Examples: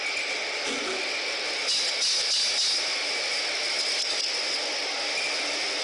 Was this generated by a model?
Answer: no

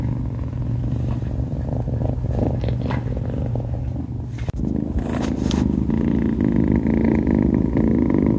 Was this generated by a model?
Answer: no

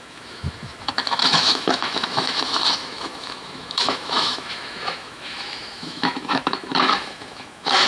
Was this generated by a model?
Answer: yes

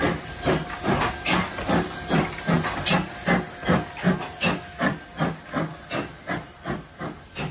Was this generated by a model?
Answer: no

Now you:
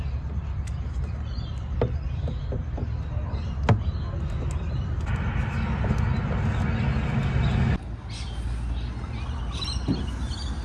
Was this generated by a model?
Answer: no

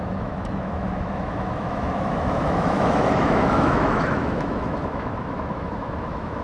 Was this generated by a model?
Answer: yes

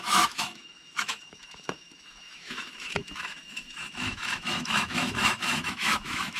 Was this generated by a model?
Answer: yes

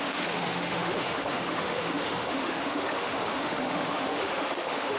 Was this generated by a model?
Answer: yes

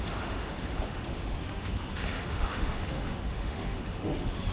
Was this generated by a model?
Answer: yes